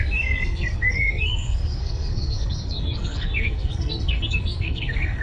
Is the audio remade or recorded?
remade